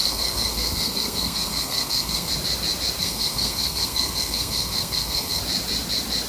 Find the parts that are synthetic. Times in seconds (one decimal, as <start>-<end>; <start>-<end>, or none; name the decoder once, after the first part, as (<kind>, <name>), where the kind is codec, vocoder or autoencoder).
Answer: 0.0-2.3 (codec, SNAC); 3.0-5.4